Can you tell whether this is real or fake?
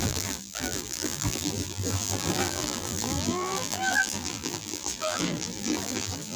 fake